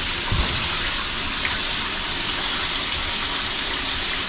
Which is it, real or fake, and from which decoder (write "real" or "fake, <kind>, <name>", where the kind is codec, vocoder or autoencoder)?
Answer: real